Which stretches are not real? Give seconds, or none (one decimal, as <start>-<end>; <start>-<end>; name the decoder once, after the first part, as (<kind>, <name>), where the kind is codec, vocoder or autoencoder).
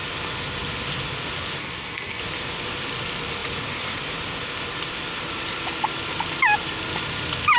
1.6-2.2 (codec, SNAC)